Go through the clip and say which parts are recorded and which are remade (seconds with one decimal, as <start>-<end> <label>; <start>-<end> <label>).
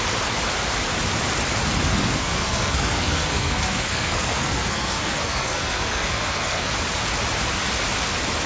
0.0-2.2 recorded; 2.2-6.7 remade; 6.7-8.5 recorded